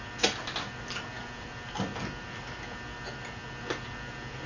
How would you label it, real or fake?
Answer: real